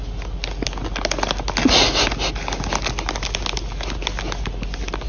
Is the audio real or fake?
real